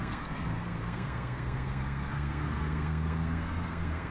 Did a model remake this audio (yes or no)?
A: yes